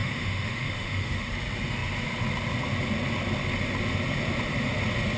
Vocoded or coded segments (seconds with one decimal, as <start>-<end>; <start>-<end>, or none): 0.0-1.3